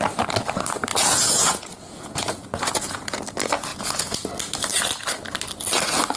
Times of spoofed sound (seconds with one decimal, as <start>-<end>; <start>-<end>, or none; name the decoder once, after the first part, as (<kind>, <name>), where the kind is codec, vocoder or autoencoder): 0.9-3.2 (vocoder, Vocos); 3.7-4.3